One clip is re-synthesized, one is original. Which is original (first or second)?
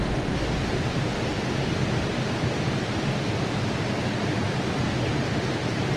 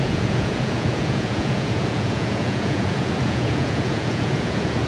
first